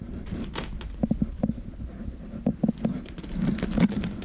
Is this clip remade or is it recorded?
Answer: recorded